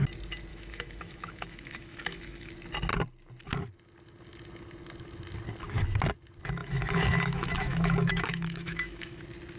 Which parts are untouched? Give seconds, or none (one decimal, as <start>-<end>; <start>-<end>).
0.0-0.5; 2.5-6.6; 9.2-9.6